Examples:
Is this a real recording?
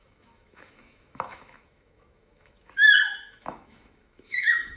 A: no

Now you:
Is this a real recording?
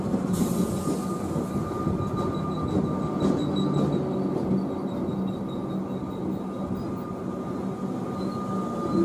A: yes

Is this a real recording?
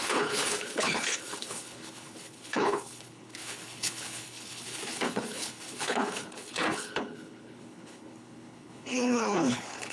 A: no